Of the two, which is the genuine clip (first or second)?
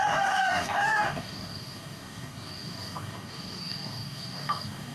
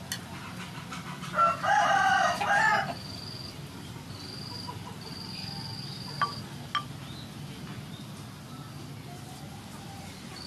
second